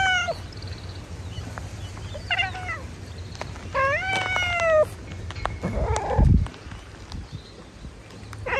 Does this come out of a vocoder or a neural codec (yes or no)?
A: no